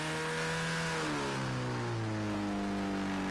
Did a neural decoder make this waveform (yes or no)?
no